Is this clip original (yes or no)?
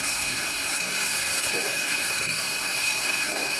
no